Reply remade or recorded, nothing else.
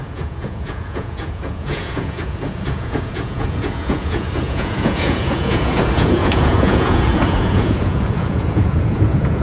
remade